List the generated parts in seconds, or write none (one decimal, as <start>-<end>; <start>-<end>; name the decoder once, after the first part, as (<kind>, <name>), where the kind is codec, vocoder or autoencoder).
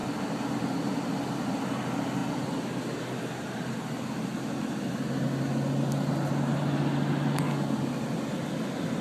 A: none